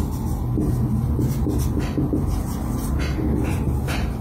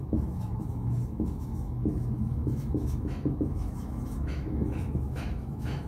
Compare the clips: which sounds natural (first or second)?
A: first